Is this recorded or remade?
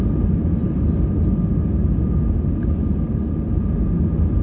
recorded